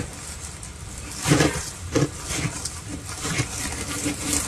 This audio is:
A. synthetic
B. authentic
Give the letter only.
B